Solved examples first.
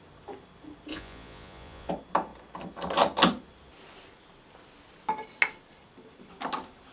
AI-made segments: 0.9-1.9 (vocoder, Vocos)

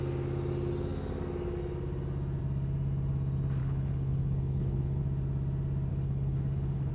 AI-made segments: 3.6-5.0 (codec, HILCodec); 5.9-6.9

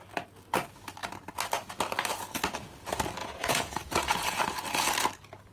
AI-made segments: 3.2-4.4 (vocoder, Vocos)

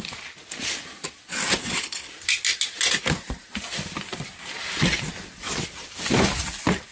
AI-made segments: 1.6-2.1 (codec, HILCodec)

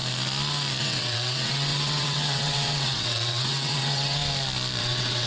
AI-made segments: 0.8-4.2 (vocoder, WaveNeXt); 4.8-5.3

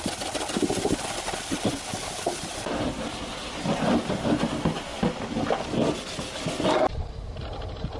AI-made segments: 1.9-3.3 (vocoder, BigVGAN v2)